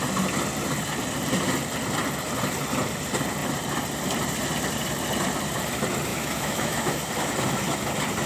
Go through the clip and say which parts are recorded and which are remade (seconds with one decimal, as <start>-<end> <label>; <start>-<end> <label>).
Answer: 0.0-6.1 recorded; 6.1-7.1 remade; 7.1-8.3 recorded